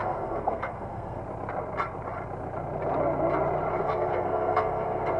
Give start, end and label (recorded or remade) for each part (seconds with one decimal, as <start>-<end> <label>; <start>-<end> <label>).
0.0-1.2 remade; 1.2-3.8 recorded; 3.8-5.2 remade

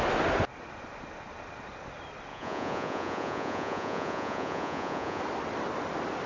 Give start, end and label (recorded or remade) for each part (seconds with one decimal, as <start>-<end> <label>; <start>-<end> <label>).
0.0-2.3 recorded; 2.3-5.2 remade; 5.2-6.3 recorded

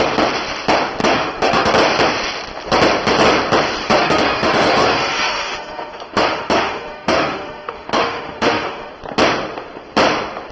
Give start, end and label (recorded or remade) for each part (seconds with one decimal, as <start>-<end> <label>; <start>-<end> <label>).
0.0-1.0 recorded; 1.0-1.7 remade; 1.7-4.0 recorded; 4.0-8.9 remade; 8.9-10.5 recorded

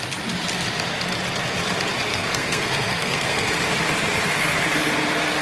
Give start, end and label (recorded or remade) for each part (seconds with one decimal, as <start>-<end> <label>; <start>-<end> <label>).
0.0-2.1 recorded; 2.1-3.5 remade; 3.5-5.4 recorded

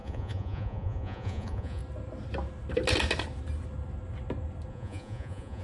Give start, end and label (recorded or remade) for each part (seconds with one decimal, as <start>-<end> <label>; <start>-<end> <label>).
0.0-1.8 remade; 1.8-4.7 recorded; 4.7-5.6 remade

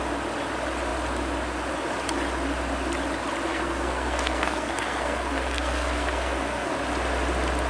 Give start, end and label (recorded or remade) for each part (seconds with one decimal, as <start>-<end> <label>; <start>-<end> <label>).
0.0-3.5 recorded; 3.5-6.7 remade; 6.7-7.7 recorded

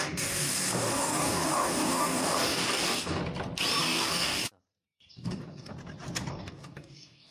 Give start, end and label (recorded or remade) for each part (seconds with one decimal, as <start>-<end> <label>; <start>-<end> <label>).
0.0-3.2 remade; 3.2-3.8 recorded; 3.8-4.4 remade; 4.4-5.1 recorded; 5.1-5.7 remade; 5.7-6.3 recorded; 6.3-7.3 remade

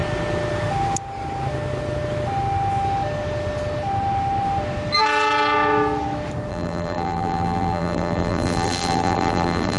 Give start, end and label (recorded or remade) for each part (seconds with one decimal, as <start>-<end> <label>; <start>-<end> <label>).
0.0-6.5 recorded; 6.5-9.8 remade